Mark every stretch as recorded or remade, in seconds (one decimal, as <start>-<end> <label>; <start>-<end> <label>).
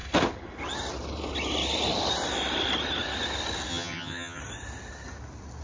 0.0-3.7 recorded; 3.7-4.4 remade; 4.4-5.6 recorded